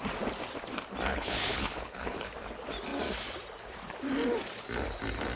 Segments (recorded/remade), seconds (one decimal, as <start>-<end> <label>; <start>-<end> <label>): 0.0-1.1 recorded; 1.1-2.3 remade; 2.3-5.4 recorded